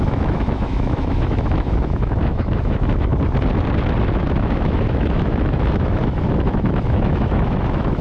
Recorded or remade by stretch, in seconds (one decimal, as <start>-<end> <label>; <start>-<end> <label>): 0.0-3.1 remade; 3.1-4.2 recorded; 4.2-8.0 remade